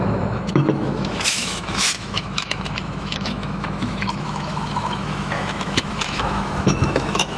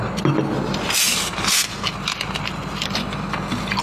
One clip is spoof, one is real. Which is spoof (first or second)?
first